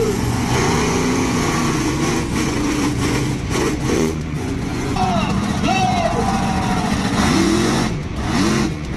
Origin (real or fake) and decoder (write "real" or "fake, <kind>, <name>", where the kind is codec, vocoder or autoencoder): fake, vocoder, Vocos